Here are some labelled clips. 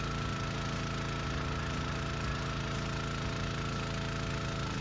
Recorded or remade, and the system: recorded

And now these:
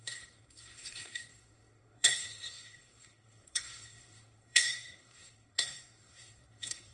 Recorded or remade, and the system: remade, codec, SNAC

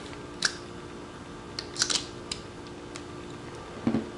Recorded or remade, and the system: recorded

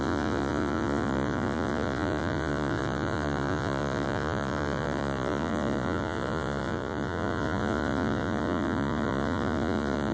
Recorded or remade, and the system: remade, vocoder, Vocos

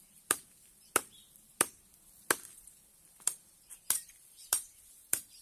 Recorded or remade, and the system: remade, vocoder, BigVGAN v2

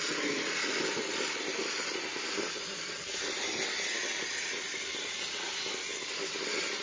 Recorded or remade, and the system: recorded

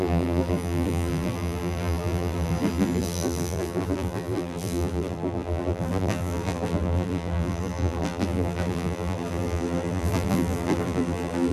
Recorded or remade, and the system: remade, vocoder, BigVGAN v2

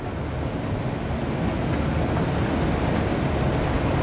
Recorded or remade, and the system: recorded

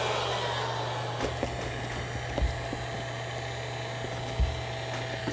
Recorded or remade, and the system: recorded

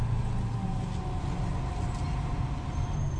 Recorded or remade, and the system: recorded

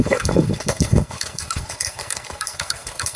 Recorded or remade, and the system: remade, codec, SNAC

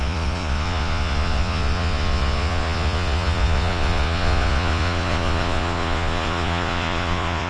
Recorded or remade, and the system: remade, vocoder, Vocos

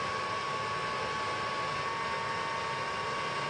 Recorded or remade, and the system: recorded